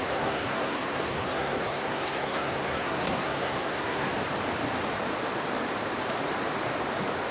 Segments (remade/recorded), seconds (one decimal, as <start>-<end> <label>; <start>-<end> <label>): 0.0-4.1 remade; 4.1-7.3 recorded